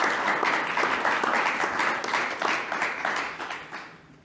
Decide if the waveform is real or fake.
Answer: real